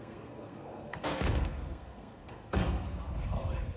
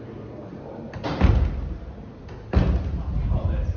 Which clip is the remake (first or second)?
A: first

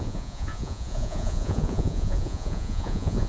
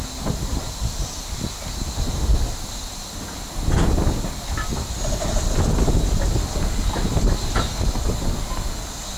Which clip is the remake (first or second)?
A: first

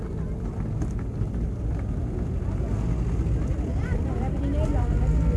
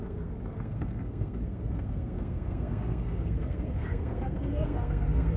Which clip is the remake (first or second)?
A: second